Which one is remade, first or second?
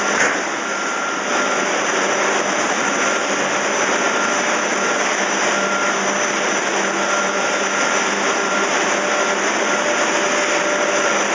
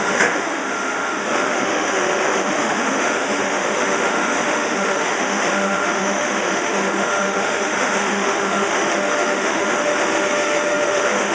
second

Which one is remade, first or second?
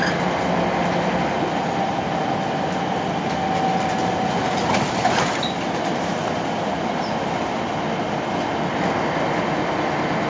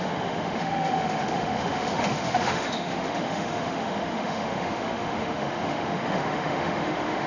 second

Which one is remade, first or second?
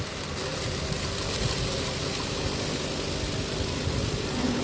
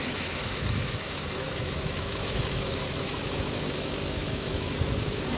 second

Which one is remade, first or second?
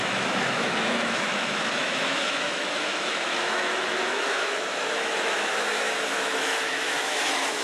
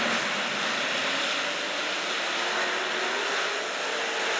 first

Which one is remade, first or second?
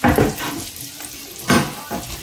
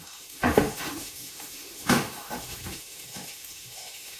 second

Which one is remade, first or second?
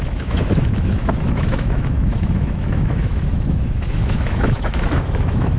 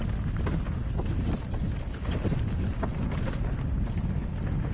first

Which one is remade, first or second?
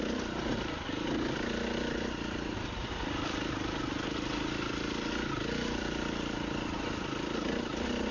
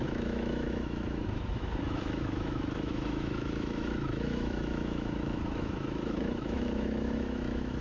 second